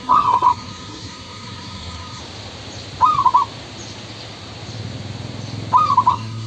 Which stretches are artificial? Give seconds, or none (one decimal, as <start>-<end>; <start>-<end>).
0.0-2.2; 6.1-6.5